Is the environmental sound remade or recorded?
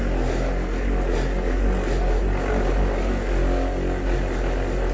recorded